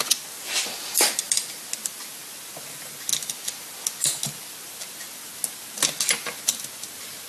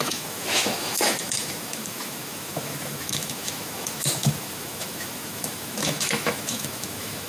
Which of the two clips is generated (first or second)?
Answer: second